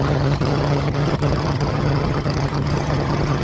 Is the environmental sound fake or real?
fake